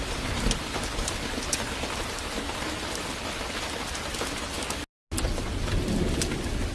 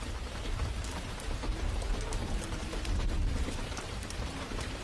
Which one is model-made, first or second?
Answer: second